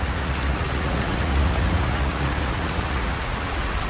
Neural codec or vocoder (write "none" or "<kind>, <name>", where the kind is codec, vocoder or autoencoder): vocoder, Vocos